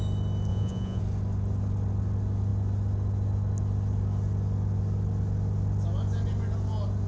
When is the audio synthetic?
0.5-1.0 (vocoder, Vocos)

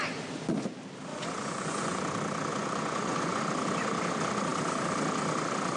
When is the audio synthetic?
1.1-2.0 (vocoder, Vocos); 2.5-3.4

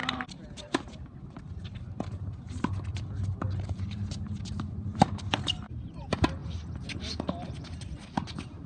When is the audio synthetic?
none

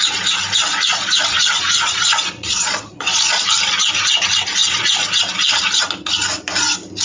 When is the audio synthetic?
0.9-3.2 (vocoder, Vocos); 4.6-5.2

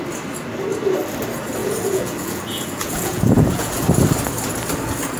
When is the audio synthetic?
1.6-3.8 (vocoder, Vocos)

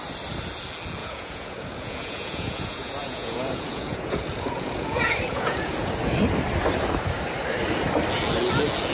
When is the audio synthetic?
1.0-5.9 (vocoder, Vocos)